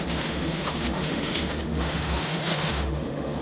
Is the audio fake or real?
fake